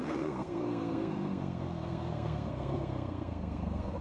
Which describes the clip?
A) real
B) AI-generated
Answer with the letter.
B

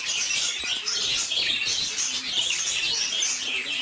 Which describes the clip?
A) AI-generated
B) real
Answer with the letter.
B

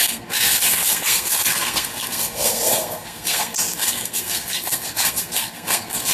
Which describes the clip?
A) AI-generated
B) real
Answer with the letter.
A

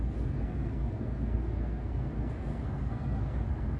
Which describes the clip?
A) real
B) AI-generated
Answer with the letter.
B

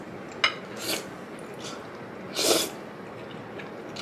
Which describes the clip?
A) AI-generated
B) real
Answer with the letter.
B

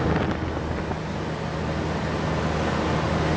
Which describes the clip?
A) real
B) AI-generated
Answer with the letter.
A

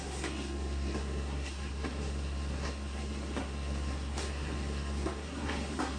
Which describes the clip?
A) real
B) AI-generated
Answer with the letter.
B